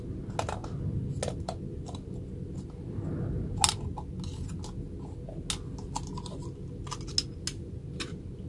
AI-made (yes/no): no